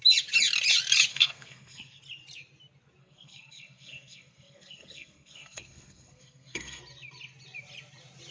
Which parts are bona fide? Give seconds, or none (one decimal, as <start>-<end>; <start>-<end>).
0.0-1.1; 2.0-3.0; 6.8-8.3